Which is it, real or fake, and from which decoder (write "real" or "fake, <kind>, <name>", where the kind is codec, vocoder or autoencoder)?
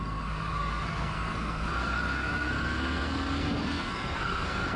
fake, codec, SNAC